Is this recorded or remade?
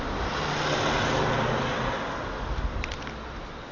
recorded